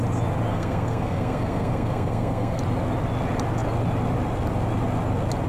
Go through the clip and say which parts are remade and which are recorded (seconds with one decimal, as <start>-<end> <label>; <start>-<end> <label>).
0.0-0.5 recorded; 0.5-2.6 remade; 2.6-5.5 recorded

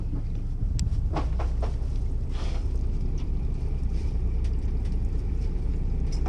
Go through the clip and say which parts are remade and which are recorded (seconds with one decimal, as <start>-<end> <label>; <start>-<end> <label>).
0.0-1.9 recorded; 1.9-5.7 remade; 5.7-6.3 recorded

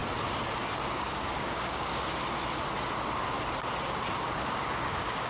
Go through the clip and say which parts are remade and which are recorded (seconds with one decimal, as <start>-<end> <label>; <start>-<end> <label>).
0.0-0.9 recorded; 0.9-1.9 remade; 1.9-4.1 recorded; 4.1-5.3 remade